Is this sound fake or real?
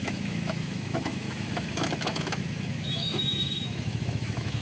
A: fake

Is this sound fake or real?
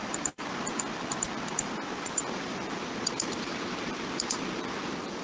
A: fake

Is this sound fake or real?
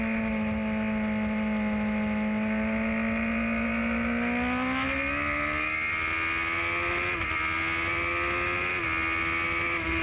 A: real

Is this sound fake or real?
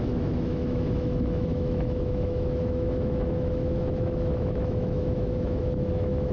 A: fake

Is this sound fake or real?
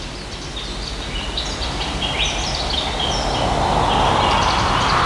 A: real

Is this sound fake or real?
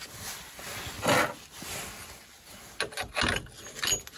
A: real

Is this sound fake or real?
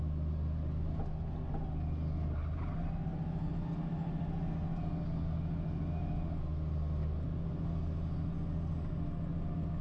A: real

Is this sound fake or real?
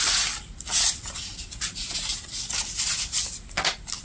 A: real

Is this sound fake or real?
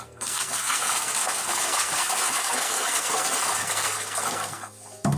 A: fake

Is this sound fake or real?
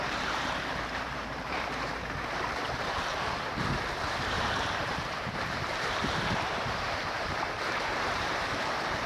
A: fake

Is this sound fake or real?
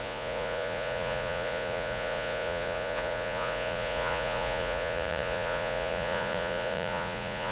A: fake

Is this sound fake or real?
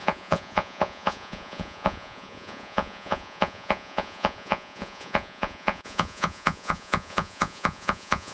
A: fake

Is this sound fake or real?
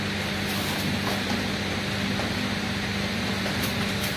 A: real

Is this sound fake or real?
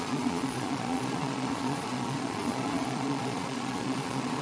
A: fake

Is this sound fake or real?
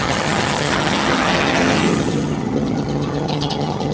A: fake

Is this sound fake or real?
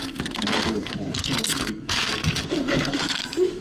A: fake